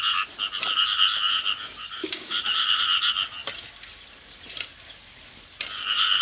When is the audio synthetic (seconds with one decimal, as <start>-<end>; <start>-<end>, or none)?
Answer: 2.0-2.8